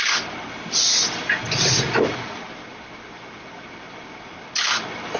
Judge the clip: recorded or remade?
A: recorded